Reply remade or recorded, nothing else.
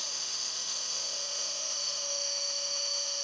remade